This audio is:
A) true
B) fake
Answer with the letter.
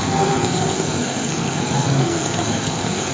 B